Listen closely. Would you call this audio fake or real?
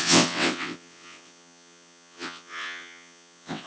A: fake